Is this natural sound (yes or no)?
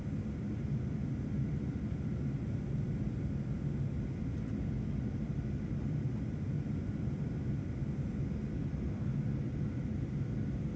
yes